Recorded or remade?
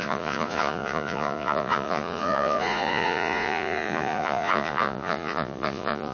remade